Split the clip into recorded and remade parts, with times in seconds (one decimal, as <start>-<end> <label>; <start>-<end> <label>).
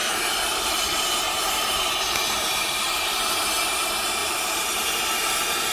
0.0-3.4 remade; 3.4-4.2 recorded; 4.2-4.9 remade; 4.9-5.7 recorded